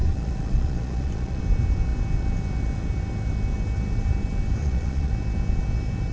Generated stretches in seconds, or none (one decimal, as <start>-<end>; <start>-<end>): 0.0-1.4; 4.6-5.1